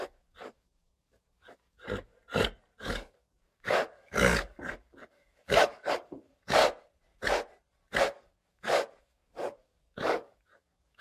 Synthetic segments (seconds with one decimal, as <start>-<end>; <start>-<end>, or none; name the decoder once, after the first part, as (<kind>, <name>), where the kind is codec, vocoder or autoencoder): 0.0-2.1 (codec, DAC); 2.8-6.6; 8.0-11.0